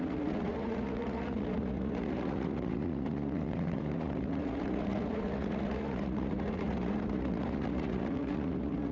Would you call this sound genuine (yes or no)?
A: no